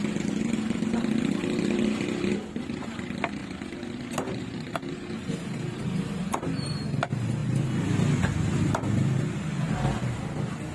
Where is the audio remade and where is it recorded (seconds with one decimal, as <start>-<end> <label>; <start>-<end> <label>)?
0.0-7.4 recorded; 7.4-8.2 remade; 8.2-10.7 recorded